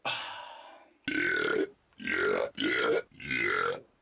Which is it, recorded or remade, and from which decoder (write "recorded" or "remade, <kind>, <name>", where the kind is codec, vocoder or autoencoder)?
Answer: recorded